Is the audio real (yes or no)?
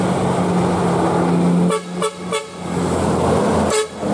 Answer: yes